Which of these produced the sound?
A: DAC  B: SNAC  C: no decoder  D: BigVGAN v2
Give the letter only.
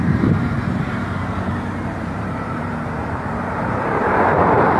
D